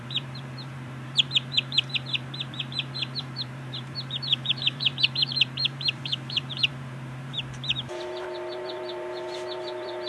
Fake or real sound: fake